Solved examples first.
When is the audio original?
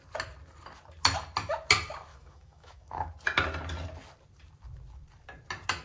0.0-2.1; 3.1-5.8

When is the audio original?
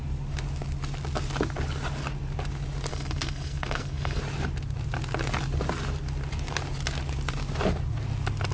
0.0-2.9; 4.2-8.5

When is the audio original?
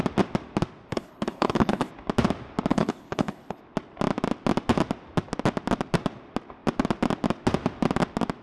0.0-0.9; 1.9-2.7; 3.6-8.4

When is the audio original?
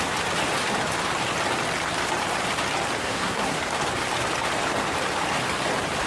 0.0-3.0; 3.6-6.1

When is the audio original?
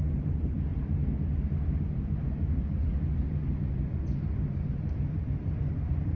0.0-6.2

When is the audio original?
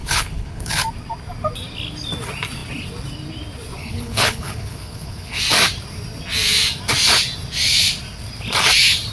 0.8-3.8; 5.4-9.1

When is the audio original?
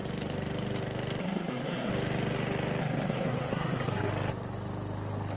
0.0-1.2; 1.9-2.8; 4.1-5.4